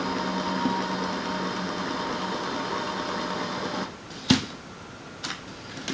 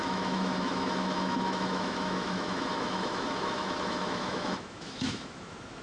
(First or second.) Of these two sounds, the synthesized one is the second